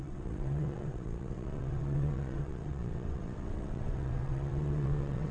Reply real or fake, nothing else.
fake